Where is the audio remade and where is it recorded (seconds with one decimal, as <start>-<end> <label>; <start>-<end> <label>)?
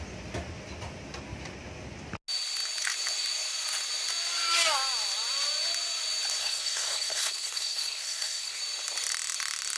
0.0-6.4 recorded; 6.4-8.6 remade; 8.6-9.8 recorded